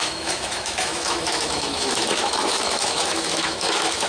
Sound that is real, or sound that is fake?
fake